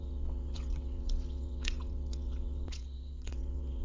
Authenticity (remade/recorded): remade